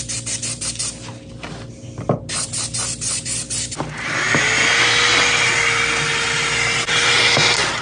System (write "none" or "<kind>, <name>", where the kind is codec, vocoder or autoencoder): none